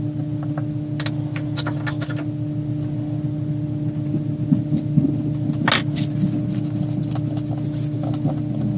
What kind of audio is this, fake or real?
real